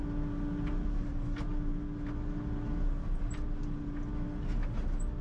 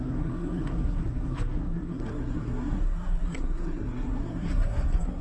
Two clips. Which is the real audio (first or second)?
first